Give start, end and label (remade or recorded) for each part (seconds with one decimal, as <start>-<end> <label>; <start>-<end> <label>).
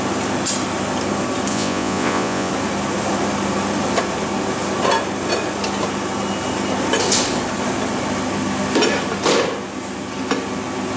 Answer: 0.0-1.5 recorded; 1.5-2.5 remade; 2.5-11.0 recorded